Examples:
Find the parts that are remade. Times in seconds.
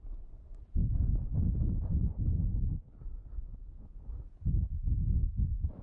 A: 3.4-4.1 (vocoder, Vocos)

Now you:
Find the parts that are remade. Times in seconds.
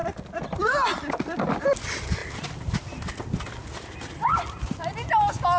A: none